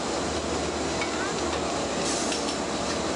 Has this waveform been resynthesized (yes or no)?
no